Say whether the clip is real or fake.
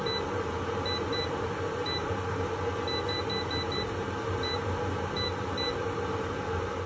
real